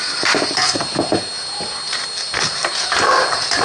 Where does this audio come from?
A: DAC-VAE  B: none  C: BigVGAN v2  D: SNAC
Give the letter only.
B